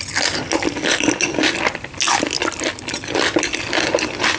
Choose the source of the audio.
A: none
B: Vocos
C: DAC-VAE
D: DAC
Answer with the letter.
A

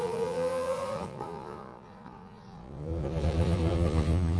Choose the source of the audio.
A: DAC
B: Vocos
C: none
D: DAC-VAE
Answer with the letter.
B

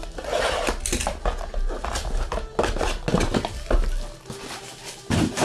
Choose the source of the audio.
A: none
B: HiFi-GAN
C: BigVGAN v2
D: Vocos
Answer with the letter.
A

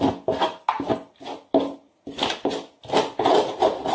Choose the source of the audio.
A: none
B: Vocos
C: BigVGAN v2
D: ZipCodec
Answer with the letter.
A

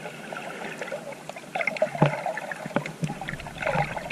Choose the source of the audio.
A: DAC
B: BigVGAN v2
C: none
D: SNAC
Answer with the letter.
C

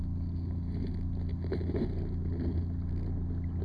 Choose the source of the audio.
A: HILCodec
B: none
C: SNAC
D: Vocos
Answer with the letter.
B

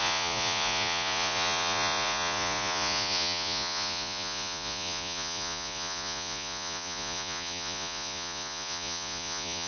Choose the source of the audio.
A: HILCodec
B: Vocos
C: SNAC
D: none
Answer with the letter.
B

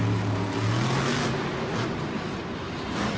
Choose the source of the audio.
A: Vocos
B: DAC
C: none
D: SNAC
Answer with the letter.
C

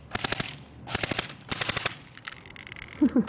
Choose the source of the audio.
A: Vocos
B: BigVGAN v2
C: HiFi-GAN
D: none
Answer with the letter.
D